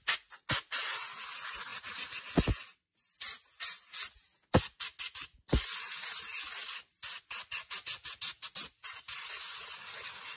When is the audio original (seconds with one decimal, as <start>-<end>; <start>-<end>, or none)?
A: 0.0-10.4